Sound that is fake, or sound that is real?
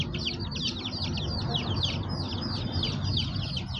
real